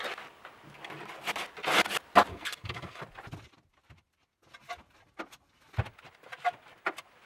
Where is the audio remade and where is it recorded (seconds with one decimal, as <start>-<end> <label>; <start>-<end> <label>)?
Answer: 0.0-2.3 recorded; 2.3-3.0 remade; 3.0-7.3 recorded